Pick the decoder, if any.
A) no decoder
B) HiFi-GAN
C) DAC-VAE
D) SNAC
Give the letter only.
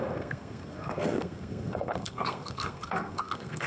D